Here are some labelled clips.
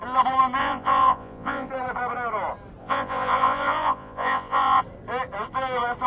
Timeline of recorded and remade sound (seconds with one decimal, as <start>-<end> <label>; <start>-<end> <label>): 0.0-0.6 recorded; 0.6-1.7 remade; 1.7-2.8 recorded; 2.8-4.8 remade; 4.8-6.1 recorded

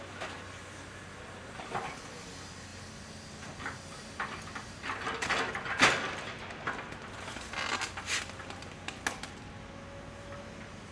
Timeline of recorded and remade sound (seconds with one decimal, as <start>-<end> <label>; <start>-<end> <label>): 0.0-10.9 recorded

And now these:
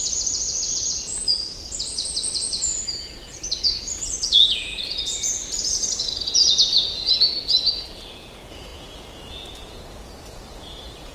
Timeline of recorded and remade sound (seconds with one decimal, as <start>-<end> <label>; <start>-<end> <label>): 0.0-11.1 remade